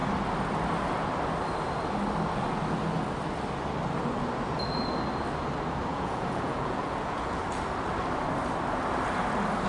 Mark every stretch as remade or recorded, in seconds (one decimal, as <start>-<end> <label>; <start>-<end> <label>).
0.0-5.9 recorded; 5.9-7.4 remade; 7.4-9.7 recorded